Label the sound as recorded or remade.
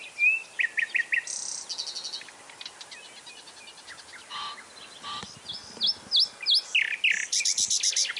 recorded